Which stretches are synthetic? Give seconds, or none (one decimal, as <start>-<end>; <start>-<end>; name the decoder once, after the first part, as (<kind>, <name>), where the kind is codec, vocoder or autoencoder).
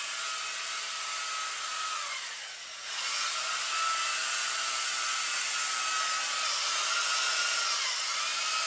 none